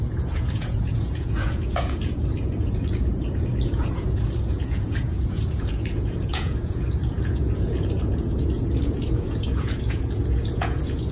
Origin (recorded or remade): remade